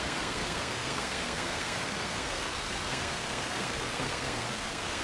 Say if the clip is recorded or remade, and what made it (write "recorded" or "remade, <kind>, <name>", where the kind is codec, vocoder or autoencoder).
remade, codec, SNAC